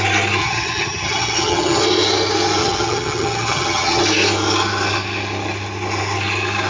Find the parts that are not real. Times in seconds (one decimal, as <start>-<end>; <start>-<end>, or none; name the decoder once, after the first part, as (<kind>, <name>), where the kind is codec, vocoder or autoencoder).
0.4-1.8 (vocoder, HiFi-GAN); 2.6-4.0